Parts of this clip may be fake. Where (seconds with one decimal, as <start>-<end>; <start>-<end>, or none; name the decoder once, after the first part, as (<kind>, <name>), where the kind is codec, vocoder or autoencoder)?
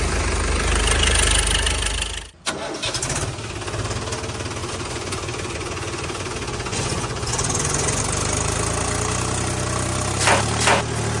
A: 4.6-8.0 (vocoder, Vocos)